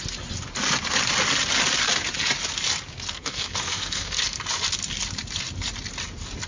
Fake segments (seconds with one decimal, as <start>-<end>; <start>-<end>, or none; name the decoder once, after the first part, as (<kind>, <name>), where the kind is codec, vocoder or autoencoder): 3.1-4.2 (codec, SNAC)